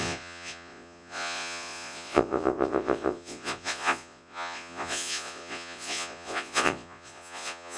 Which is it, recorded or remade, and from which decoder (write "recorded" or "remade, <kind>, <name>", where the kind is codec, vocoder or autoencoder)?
remade, vocoder, Vocos